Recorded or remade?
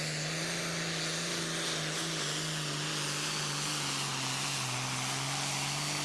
recorded